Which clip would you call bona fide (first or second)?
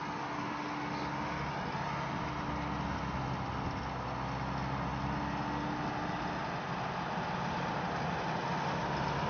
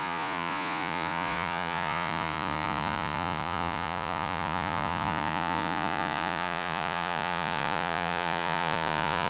first